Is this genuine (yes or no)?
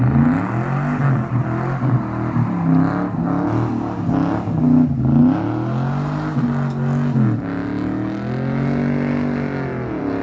yes